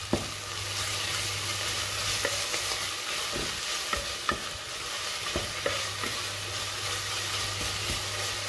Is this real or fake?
real